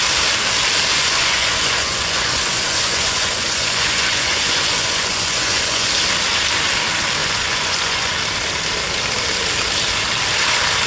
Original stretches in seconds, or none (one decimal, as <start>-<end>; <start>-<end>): 0.0-0.9; 5.9-7.2; 8.1-10.9